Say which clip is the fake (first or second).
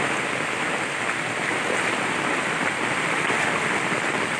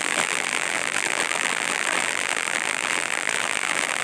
second